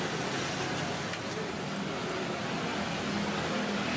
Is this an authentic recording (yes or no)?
yes